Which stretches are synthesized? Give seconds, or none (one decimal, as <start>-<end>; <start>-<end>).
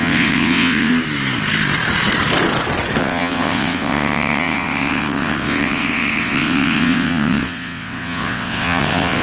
0.0-0.9; 3.0-9.2